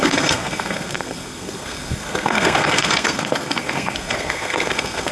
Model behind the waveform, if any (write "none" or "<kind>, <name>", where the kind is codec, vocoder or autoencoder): codec, SNAC